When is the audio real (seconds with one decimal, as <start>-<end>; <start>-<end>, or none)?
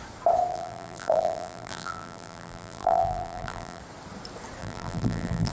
0.0-0.5; 3.8-4.6